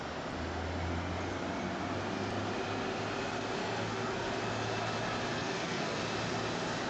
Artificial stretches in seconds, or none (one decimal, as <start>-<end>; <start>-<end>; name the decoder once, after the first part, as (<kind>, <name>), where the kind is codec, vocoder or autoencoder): 3.6-4.4 (codec, SNAC); 5.3-6.0